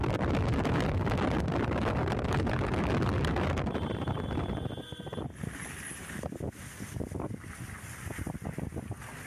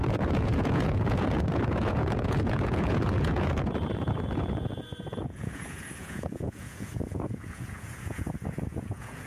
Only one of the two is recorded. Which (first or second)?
first